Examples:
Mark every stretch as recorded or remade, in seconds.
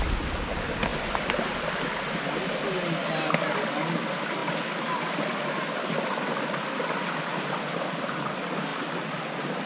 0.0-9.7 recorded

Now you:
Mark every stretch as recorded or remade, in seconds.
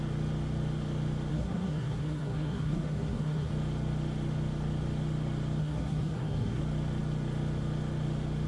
0.0-1.3 recorded; 1.3-3.5 remade; 3.5-5.6 recorded; 5.6-6.6 remade; 6.6-8.5 recorded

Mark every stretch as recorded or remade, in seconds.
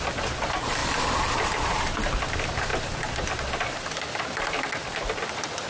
0.0-5.7 recorded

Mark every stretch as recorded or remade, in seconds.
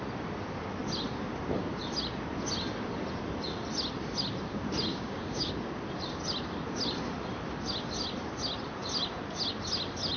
0.0-4.9 recorded; 4.9-5.5 remade; 5.5-10.2 recorded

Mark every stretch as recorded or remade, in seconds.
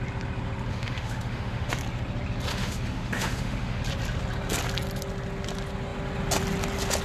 0.0-0.7 recorded; 0.7-1.7 remade; 1.7-2.5 recorded; 2.5-3.8 remade; 3.8-7.0 recorded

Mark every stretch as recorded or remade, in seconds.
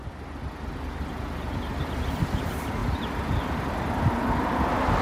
0.0-5.0 recorded